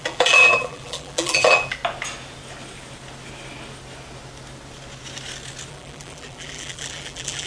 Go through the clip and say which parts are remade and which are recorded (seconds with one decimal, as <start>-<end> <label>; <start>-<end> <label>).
0.0-1.8 remade; 1.8-5.7 recorded; 5.7-7.5 remade